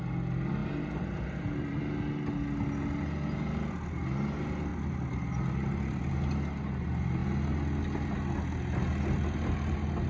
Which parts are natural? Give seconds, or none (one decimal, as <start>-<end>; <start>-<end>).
0.0-0.6; 1.8-4.7; 6.1-10.1

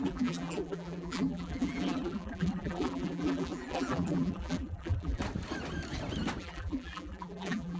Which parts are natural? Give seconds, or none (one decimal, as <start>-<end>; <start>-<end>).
5.2-6.4

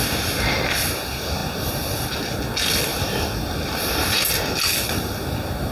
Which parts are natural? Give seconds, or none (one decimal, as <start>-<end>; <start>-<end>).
0.0-5.7

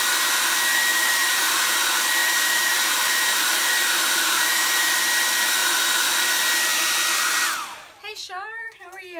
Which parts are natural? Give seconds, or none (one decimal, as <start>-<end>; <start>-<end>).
0.0-0.9; 1.8-2.2; 5.0-9.2

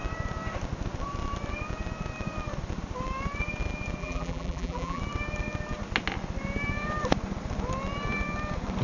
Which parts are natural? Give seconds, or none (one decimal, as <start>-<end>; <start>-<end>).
0.0-4.0; 5.0-8.8

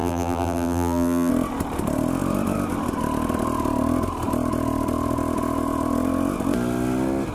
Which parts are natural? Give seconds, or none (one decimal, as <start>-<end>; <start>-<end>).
1.3-7.3

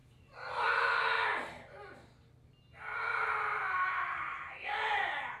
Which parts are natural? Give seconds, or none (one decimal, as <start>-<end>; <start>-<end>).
0.0-5.4